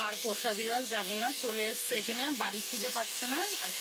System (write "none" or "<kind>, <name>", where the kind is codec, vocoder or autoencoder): codec, DAC